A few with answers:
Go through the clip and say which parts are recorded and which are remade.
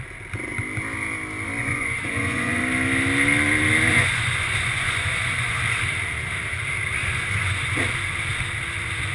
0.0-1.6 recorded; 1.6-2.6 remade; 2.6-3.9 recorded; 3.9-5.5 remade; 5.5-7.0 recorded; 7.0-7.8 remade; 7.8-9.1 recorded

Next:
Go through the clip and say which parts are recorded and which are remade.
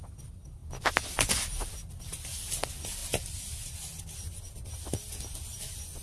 0.0-6.0 recorded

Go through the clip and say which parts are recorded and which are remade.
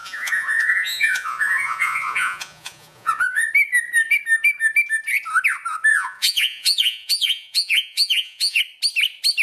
0.0-3.5 remade; 3.5-5.9 recorded; 5.9-8.6 remade; 8.6-9.4 recorded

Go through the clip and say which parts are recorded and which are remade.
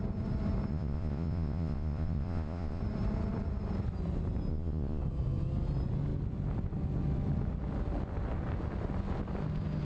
0.0-0.7 recorded; 0.7-2.8 remade; 2.8-4.5 recorded; 4.5-5.0 remade; 5.0-9.8 recorded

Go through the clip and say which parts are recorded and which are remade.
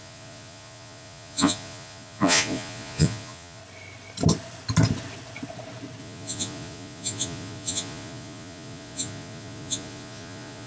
0.0-3.6 remade; 3.6-6.0 recorded; 6.0-10.7 remade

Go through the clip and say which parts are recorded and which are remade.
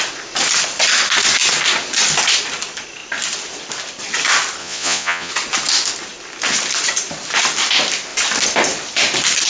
0.0-4.6 recorded; 4.6-5.3 remade; 5.3-9.5 recorded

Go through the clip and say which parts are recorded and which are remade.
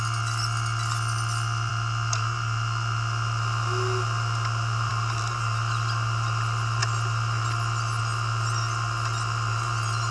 0.0-10.1 recorded